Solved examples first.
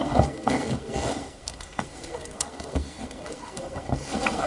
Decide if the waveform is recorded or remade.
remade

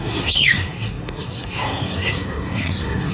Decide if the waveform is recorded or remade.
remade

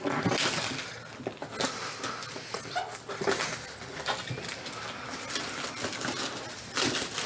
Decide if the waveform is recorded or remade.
recorded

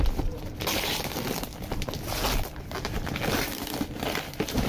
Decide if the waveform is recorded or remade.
recorded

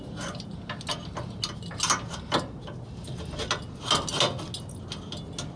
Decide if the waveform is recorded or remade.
recorded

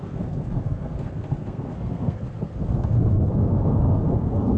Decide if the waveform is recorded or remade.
remade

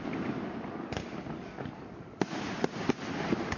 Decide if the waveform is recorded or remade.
recorded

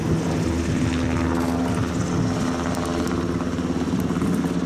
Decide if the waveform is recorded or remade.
recorded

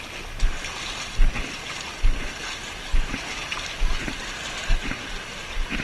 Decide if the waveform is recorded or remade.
recorded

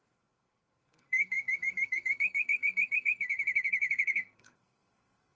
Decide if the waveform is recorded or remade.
remade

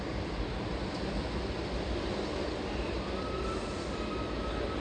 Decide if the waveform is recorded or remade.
recorded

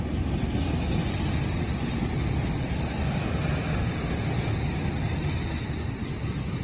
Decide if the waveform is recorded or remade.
recorded